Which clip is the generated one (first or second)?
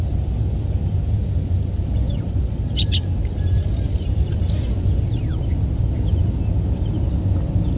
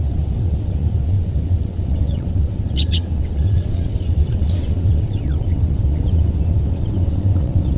second